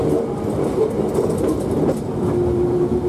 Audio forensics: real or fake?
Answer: real